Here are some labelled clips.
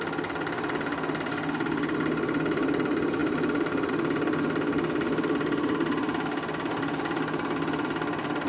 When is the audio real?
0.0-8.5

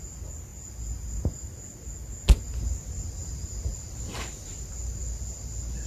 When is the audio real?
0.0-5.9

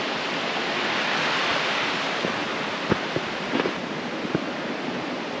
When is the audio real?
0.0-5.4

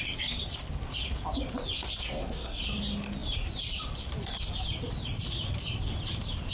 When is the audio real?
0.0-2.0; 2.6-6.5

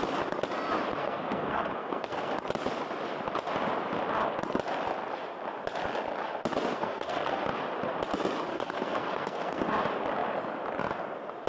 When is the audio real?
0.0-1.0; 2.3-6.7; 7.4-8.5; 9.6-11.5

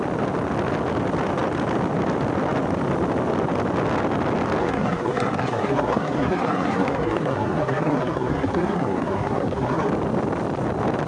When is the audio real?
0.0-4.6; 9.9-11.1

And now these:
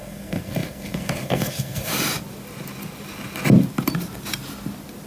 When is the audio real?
1.9-5.1